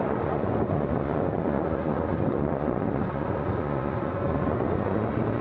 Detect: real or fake fake